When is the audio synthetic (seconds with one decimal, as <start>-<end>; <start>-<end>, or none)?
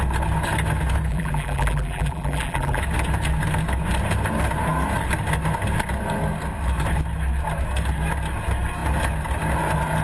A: 1.1-2.8